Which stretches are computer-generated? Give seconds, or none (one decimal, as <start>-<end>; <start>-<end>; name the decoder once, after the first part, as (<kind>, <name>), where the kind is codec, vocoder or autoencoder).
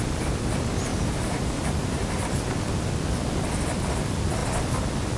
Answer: 0.9-2.3 (vocoder, BigVGAN v2)